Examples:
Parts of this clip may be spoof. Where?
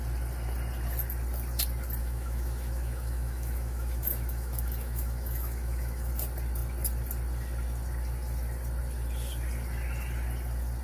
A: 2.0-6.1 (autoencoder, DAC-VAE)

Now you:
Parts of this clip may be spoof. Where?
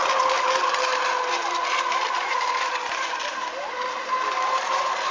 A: none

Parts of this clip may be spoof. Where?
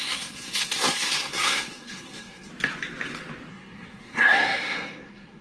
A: 0.0-2.5 (codec, SNAC); 3.5-5.4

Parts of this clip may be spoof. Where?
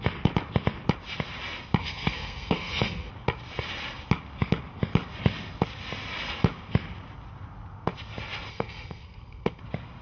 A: 1.8-3.1 (codec, SNAC); 8.5-9.6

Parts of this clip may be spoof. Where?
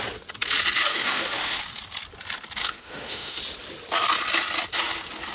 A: 0.9-1.6 (autoencoder, DAC-VAE); 2.6-3.4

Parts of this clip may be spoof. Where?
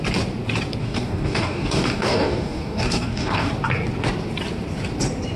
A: 0.8-3.5 (codec, DAC)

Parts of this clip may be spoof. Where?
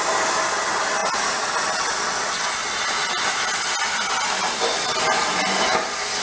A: 1.0-1.5 (vocoder, Vocos)